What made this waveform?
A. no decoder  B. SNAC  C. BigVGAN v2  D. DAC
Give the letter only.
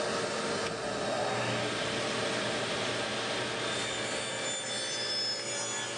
A